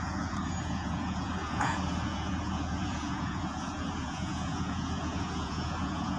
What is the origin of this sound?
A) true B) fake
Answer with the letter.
B